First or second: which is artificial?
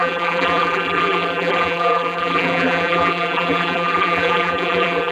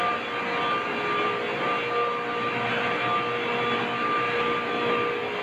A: first